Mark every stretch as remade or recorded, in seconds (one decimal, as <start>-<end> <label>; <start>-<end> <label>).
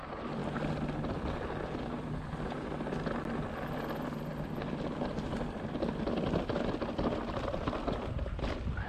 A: 0.0-8.9 recorded